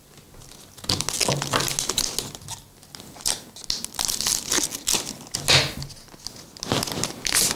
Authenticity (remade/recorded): recorded